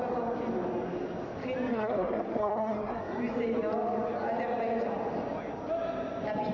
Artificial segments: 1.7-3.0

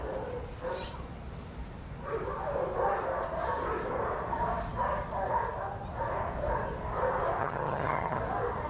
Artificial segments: 7.4-8.2